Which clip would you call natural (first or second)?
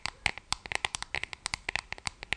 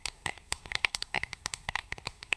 first